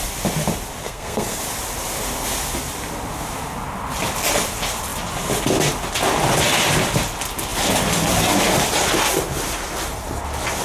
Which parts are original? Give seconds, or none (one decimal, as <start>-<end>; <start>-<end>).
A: 0.0-0.8; 1.4-10.6